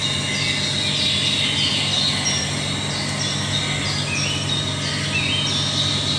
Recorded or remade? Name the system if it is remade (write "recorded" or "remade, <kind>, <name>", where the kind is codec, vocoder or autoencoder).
recorded